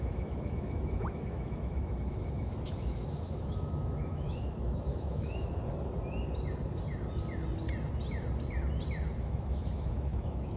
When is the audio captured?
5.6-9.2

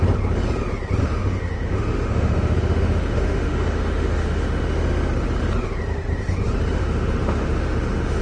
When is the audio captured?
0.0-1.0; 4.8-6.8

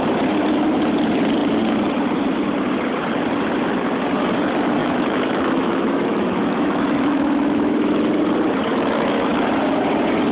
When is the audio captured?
0.0-4.8; 8.2-8.7; 9.4-10.3

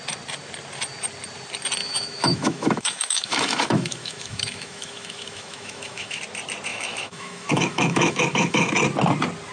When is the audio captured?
0.0-1.8; 6.2-6.7; 8.7-9.5